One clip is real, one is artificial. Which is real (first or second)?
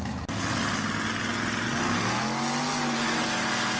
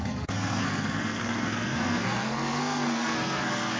first